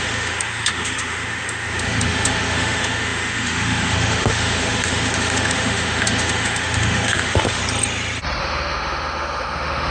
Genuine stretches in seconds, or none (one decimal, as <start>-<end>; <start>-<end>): 7.6-8.4